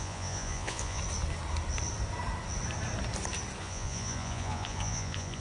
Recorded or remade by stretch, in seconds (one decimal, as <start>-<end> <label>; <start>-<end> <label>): 0.0-1.0 remade; 1.0-3.6 recorded; 3.6-5.4 remade